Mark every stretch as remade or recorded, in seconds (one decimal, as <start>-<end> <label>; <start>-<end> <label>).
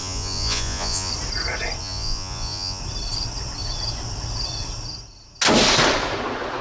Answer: 0.0-1.1 remade; 1.1-1.8 recorded; 1.8-2.8 remade; 2.8-6.6 recorded